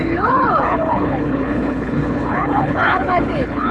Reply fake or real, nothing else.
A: fake